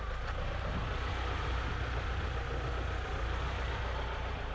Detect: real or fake real